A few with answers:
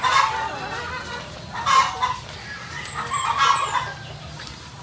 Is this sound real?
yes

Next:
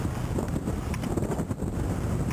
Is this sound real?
yes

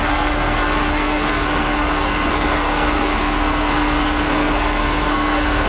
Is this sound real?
no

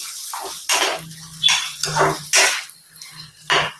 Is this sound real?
yes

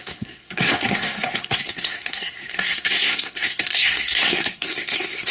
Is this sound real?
no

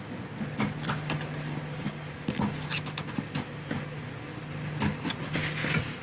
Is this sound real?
yes